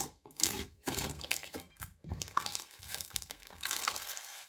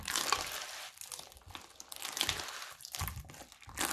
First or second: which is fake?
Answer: first